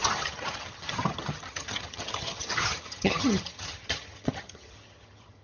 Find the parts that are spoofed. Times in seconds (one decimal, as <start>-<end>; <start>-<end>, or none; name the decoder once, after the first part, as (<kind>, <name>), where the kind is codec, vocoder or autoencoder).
0.0-5.4 (vocoder, HiFi-GAN)